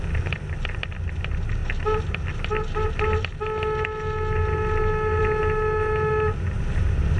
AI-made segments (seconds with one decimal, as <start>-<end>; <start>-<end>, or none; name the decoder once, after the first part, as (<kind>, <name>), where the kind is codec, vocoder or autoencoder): none